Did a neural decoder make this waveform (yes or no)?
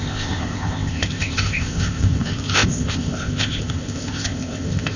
yes